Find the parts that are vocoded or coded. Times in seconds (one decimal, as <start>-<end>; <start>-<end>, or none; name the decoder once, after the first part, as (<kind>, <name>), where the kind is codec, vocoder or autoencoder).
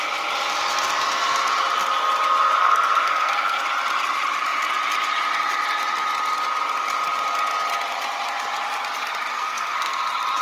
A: 2.6-3.6 (codec, SNAC); 9.3-10.0